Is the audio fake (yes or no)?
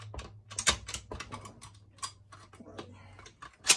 no